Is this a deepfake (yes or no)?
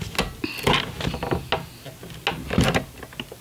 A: no